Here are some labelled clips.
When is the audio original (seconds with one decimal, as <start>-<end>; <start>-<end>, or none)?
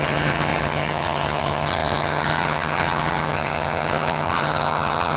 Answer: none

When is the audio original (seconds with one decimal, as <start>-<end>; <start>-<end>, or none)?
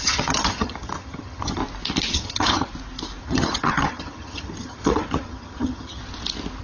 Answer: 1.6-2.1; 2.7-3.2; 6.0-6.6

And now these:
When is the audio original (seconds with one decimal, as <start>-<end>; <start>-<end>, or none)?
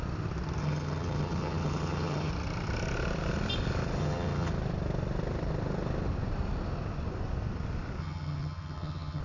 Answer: 0.0-0.6; 2.3-4.0; 4.5-8.0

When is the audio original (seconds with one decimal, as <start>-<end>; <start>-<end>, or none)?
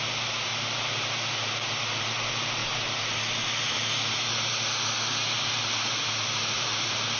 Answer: 0.0-7.2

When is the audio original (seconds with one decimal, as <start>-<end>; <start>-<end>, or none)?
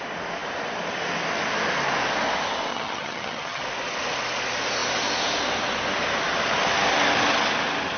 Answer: 0.0-2.7; 3.6-8.0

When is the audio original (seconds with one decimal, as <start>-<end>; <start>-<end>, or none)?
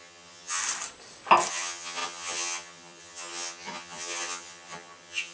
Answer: 0.6-1.5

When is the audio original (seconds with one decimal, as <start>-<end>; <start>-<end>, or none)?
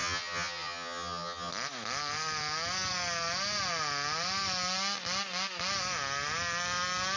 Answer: 1.5-7.2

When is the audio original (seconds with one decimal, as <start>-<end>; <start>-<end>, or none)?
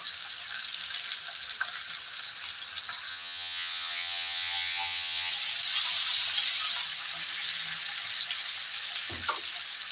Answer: 0.0-3.1; 5.3-9.9